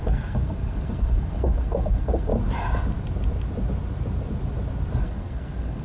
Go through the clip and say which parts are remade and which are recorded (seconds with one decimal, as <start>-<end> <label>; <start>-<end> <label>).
0.0-2.3 remade; 2.3-5.0 recorded; 5.0-5.8 remade